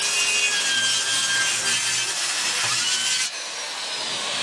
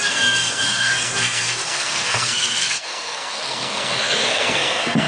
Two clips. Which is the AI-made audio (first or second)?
second